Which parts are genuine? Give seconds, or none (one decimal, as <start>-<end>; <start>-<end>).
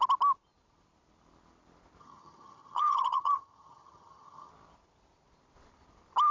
0.0-2.0; 4.5-6.3